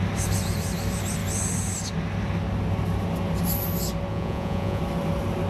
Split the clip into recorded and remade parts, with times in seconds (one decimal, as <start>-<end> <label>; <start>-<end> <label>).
0.0-4.1 recorded; 4.1-4.8 remade; 4.8-5.5 recorded